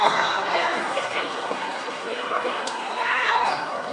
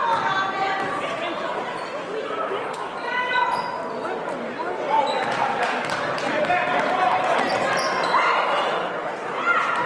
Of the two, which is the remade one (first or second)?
first